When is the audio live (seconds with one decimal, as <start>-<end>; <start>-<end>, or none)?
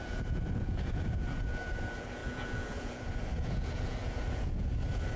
none